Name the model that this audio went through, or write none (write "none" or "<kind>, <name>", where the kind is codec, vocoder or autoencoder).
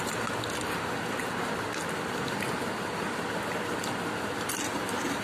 none